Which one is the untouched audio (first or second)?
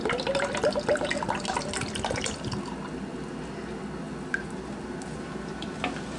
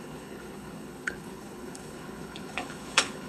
first